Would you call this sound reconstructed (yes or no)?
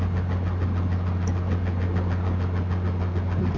no